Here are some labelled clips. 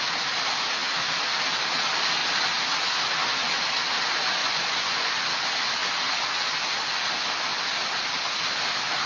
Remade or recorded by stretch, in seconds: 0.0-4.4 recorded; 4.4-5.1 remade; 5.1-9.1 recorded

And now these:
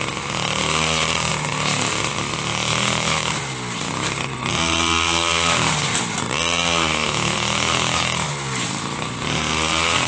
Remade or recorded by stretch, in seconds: 0.0-2.7 recorded; 2.7-3.3 remade; 3.3-6.9 recorded; 6.9-8.3 remade; 8.3-10.1 recorded

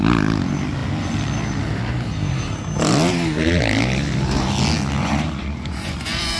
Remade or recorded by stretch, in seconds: 0.0-5.0 recorded; 5.0-6.4 remade

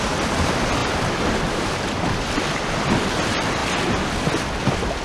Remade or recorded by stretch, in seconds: 0.0-3.6 remade; 3.6-4.5 recorded; 4.5-5.0 remade

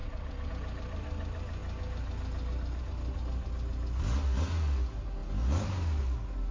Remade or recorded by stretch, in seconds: 0.0-0.5 remade; 0.5-6.5 recorded

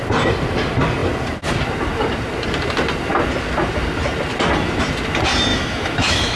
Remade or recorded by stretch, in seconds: 0.0-5.5 recorded; 5.5-6.4 remade